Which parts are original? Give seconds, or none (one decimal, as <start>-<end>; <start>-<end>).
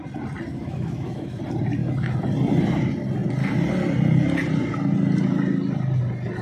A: 0.0-0.5; 1.4-6.4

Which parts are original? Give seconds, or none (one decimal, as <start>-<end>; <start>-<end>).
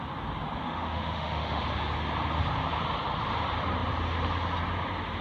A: 0.0-0.6; 1.6-5.2